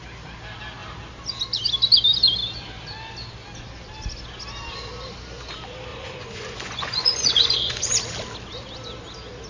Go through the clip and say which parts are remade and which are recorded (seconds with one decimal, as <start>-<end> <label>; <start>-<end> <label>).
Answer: 0.0-5.9 recorded; 5.9-7.9 remade; 7.9-9.5 recorded